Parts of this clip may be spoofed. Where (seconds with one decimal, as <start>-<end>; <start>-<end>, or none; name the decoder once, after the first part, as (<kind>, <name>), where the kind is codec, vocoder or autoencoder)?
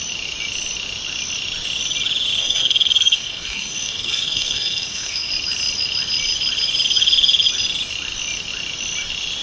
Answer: 2.4-5.3 (codec, SNAC)